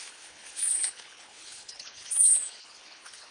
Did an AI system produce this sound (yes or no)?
yes